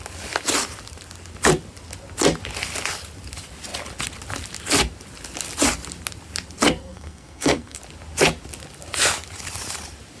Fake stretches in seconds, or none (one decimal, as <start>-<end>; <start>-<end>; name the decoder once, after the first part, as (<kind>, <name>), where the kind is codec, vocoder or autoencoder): 6.8-7.8 (codec, SNAC)